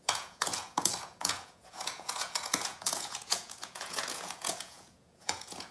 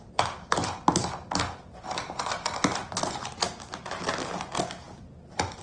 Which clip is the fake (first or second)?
first